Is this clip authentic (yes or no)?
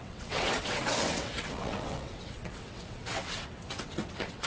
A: no